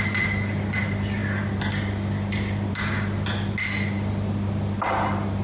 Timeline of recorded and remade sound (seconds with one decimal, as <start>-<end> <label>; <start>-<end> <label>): 0.0-5.4 recorded